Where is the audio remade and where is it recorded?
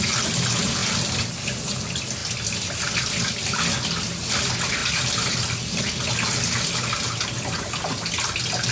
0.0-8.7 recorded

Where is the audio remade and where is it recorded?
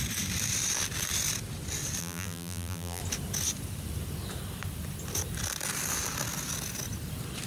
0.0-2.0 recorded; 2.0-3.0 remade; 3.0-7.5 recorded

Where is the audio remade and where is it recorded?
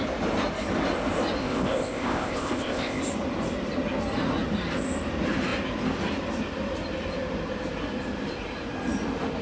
0.0-1.4 recorded; 1.4-3.0 remade; 3.0-9.4 recorded